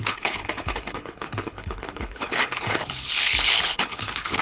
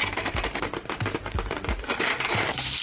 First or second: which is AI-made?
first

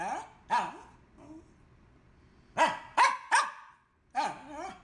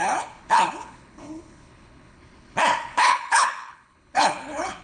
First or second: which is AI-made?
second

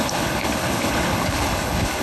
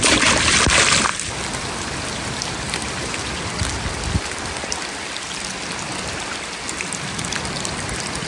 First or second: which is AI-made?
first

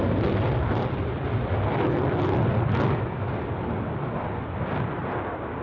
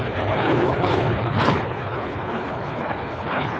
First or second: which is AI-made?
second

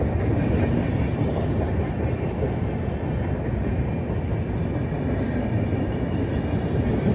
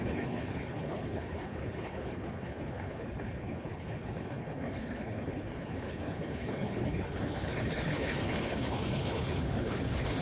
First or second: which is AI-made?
second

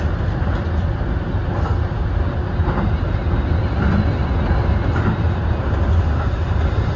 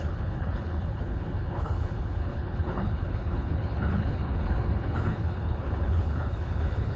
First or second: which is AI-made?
second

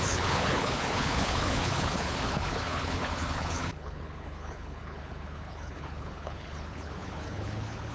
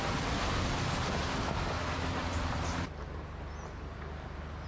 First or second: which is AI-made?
first